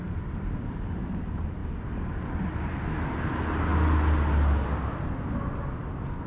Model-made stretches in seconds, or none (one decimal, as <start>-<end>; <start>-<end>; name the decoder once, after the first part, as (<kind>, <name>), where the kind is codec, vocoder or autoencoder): none

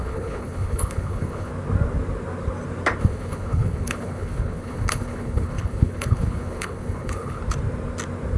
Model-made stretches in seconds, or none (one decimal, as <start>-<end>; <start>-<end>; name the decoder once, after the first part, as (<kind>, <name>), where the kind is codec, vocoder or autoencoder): 0.0-1.5 (codec, HILCodec); 3.0-7.4

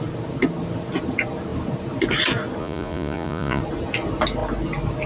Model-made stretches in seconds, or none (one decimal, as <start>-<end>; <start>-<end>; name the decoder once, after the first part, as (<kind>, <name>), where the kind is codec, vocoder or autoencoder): 2.6-3.6 (vocoder, Vocos)

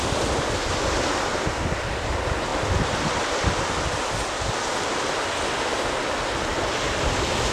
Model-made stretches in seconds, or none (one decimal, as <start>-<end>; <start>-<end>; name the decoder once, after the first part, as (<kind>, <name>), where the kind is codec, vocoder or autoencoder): none

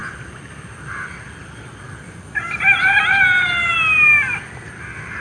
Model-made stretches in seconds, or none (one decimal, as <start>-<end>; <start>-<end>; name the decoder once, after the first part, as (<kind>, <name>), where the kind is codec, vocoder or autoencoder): none

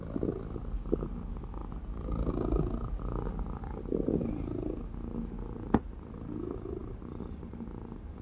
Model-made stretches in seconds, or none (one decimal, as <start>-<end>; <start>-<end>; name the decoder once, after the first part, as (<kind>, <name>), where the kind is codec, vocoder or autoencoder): none

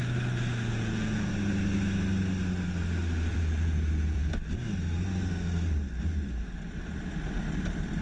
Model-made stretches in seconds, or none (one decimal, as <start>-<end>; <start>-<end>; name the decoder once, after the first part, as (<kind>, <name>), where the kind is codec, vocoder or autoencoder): 0.7-1.3 (vocoder, Vocos); 3.3-4.3

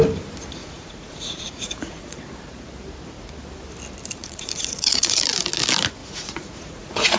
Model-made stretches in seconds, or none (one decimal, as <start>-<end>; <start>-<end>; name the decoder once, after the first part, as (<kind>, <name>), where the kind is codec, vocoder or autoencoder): 0.6-2.2 (vocoder, Vocos); 4.2-5.2; 6.0-7.2